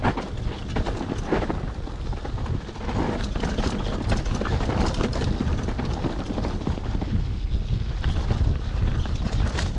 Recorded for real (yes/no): yes